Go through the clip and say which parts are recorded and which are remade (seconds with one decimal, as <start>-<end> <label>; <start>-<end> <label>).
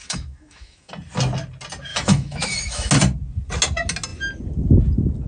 0.0-0.9 remade; 0.9-1.9 recorded; 1.9-2.9 remade; 2.9-5.3 recorded